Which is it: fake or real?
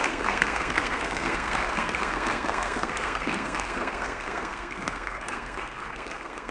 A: fake